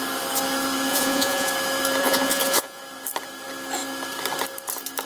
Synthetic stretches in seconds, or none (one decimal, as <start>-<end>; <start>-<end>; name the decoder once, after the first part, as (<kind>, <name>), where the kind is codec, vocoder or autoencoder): 0.9-1.5 (vocoder, Vocos); 2.0-2.8